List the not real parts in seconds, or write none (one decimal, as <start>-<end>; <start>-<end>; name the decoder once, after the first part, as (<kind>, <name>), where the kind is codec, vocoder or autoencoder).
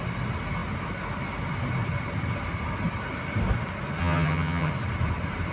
4.0-4.7 (vocoder, HiFi-GAN)